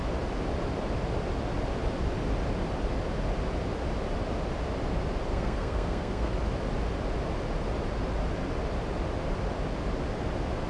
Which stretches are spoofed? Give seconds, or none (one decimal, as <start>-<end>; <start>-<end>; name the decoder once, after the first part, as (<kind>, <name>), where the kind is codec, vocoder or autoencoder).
5.3-6.3 (codec, SNAC)